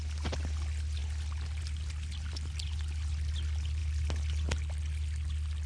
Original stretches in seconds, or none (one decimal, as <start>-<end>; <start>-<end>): 0.0-5.7